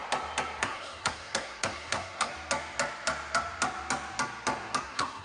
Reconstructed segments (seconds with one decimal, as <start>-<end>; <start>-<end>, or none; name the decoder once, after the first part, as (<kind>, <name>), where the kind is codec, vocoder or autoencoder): 0.6-2.3 (codec, SNAC); 4.8-5.2